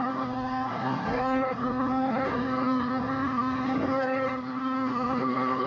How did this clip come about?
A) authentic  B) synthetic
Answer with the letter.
B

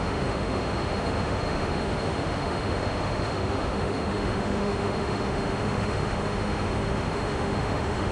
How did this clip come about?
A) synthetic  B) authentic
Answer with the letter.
A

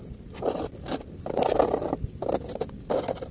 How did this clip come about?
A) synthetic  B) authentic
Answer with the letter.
B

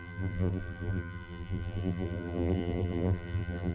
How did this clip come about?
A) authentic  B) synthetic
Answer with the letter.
B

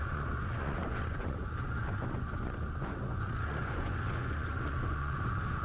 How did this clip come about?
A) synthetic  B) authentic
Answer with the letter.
A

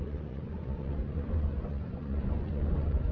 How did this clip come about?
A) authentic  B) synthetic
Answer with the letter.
B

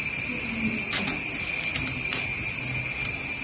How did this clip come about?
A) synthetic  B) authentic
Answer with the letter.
B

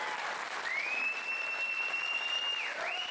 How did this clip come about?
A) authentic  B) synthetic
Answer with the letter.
A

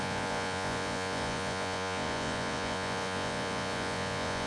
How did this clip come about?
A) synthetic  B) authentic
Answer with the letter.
A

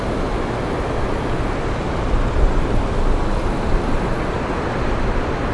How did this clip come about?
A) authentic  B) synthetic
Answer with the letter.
A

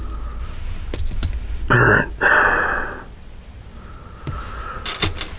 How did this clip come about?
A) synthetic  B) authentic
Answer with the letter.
B